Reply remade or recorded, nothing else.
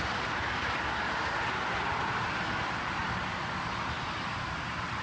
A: recorded